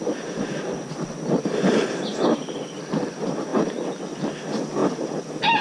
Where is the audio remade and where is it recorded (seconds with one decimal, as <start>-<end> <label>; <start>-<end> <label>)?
0.0-5.6 recorded